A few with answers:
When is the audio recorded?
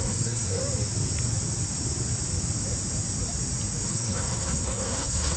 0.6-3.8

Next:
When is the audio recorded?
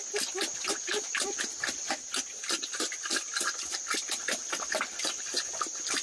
0.0-6.0